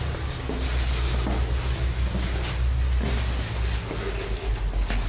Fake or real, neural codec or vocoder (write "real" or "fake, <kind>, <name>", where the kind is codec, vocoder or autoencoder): real